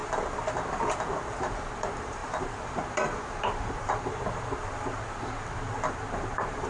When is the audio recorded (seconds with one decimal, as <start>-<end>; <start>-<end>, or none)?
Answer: 0.0-0.7